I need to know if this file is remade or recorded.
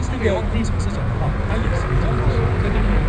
recorded